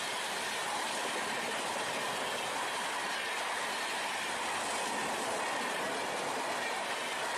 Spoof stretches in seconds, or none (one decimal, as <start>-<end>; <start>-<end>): none